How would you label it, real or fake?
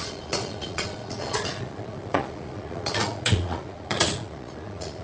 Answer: fake